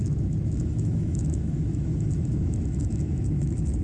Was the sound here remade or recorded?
remade